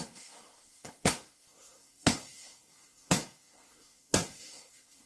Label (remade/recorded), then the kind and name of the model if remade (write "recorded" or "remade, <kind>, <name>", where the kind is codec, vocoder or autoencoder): remade, codec, SNAC